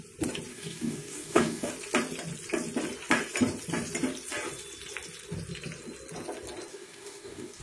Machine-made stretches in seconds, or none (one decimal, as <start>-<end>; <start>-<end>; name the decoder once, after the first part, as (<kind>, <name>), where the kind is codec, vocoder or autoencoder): 0.5-1.7 (codec, DAC); 6.7-7.6